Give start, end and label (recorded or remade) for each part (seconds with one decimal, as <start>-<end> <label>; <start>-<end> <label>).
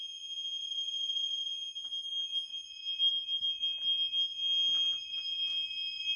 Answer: 0.0-0.6 recorded; 0.6-1.5 remade; 1.5-6.2 recorded